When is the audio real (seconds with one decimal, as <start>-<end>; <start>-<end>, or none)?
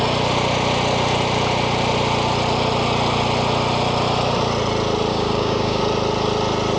0.0-5.1; 5.8-6.8